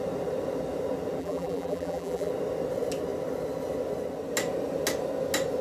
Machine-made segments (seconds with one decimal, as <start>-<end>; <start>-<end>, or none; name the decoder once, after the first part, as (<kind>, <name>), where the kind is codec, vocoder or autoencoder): 1.2-2.3 (vocoder, BigVGAN v2)